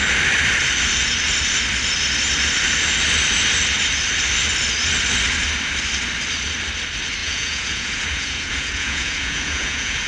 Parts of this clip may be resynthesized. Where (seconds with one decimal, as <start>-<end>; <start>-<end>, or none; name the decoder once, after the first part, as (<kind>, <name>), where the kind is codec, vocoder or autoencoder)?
7.2-10.1 (vocoder, Vocos)